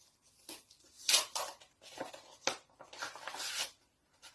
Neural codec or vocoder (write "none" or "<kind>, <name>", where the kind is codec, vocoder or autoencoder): none